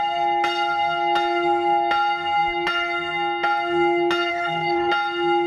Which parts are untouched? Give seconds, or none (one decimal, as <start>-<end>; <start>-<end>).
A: 0.0-4.3; 4.9-5.5